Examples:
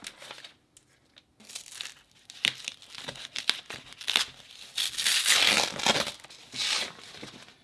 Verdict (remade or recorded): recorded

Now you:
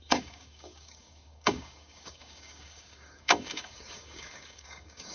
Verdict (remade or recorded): remade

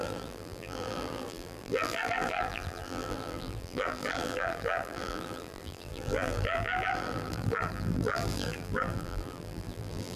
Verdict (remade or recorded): remade